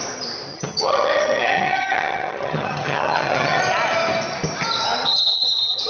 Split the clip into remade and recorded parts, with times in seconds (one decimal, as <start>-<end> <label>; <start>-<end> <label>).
0.0-0.5 recorded; 0.5-3.6 remade; 3.6-5.0 recorded; 5.0-5.9 remade